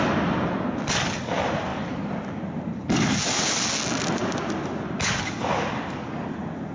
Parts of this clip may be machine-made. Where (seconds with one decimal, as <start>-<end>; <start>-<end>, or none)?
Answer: none